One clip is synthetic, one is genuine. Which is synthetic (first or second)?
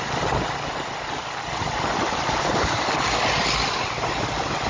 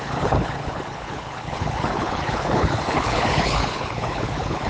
second